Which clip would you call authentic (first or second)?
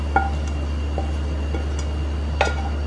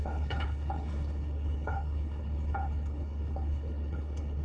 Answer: first